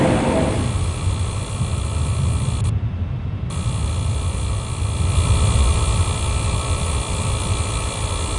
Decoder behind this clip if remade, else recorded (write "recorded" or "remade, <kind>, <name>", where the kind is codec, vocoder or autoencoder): recorded